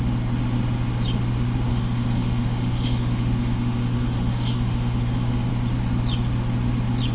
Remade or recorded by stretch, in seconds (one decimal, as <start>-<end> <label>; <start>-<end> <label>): 0.0-1.7 recorded; 1.7-5.5 remade; 5.5-7.1 recorded